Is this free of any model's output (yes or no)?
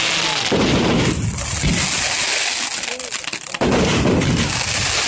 yes